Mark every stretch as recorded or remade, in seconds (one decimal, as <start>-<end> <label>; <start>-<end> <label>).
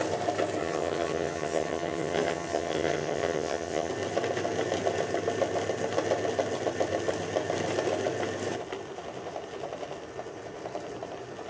0.0-0.6 recorded; 0.6-3.9 remade; 3.9-11.5 recorded